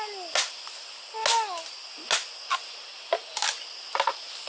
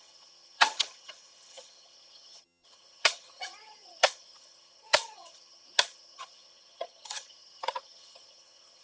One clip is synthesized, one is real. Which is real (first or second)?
first